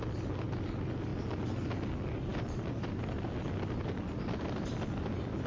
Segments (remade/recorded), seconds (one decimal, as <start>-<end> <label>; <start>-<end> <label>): 0.0-5.5 recorded